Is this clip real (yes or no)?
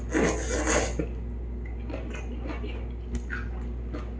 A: yes